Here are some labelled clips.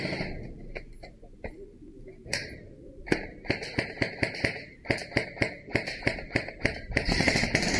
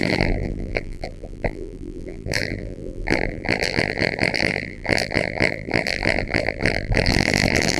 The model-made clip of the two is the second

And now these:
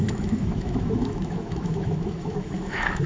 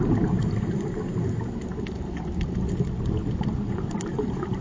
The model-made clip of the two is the first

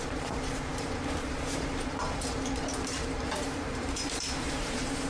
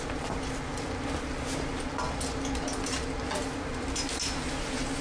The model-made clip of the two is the first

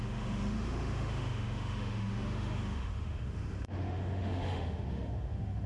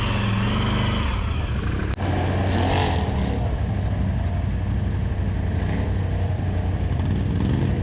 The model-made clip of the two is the first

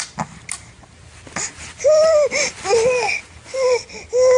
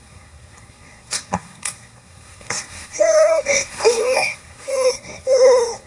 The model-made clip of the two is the second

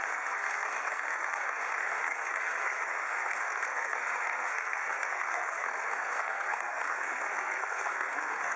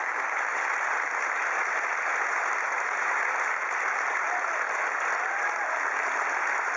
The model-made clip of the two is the first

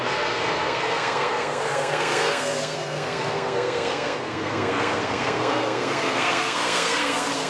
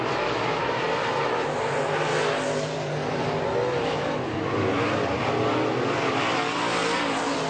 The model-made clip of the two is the first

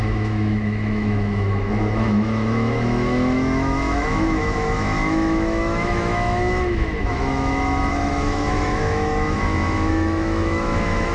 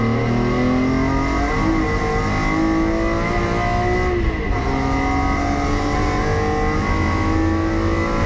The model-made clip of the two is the first